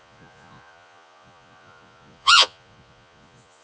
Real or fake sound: fake